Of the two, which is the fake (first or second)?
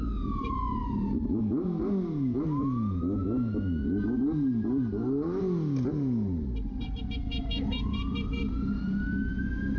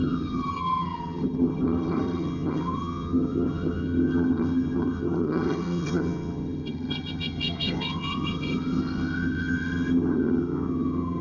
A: second